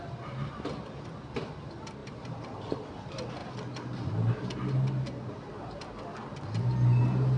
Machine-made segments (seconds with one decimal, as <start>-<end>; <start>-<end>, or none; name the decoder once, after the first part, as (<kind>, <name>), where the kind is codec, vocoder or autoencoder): 2.0-2.6 (vocoder, BigVGAN v2)